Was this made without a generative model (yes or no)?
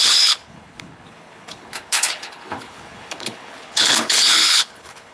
no